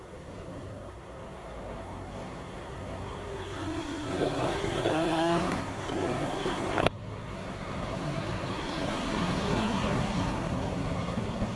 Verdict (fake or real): fake